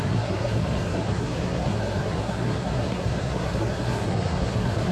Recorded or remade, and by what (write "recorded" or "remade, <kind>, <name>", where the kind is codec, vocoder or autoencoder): remade, codec, SNAC